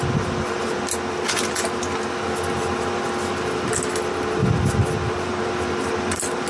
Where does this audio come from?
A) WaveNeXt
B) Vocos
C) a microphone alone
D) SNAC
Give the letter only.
C